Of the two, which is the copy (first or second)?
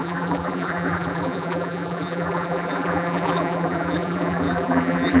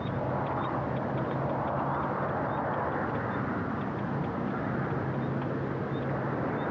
first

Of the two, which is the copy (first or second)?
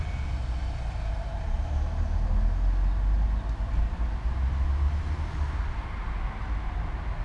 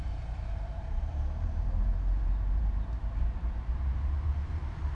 second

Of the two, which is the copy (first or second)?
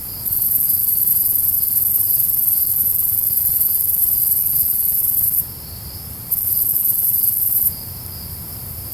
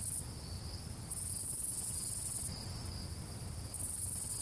first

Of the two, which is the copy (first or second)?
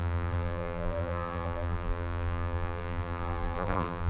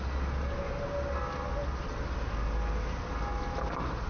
first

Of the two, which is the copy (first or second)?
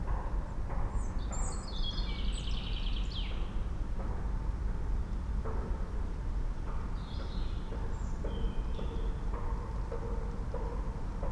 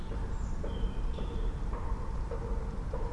second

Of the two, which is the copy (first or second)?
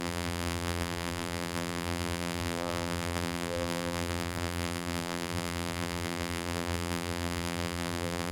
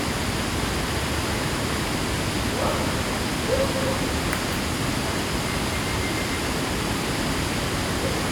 first